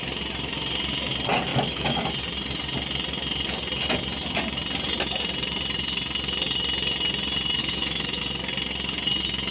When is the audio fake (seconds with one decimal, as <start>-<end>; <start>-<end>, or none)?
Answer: 1.5-2.0; 7.6-8.2